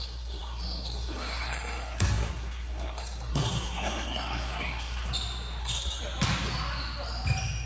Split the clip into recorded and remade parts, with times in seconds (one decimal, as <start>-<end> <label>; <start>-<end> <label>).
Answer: 0.0-5.1 remade; 5.1-5.6 recorded; 5.6-6.0 remade; 6.0-7.7 recorded